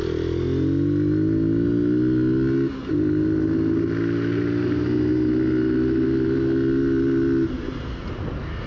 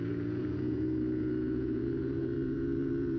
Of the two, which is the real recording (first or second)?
first